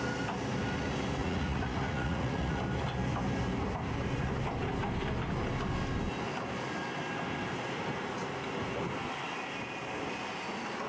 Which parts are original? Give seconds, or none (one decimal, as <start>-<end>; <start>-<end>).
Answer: 0.0-1.2; 2.6-10.9